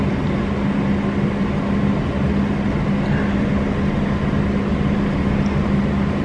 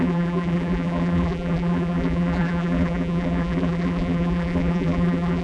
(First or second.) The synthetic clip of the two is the second